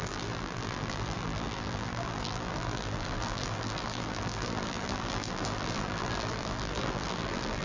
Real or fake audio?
fake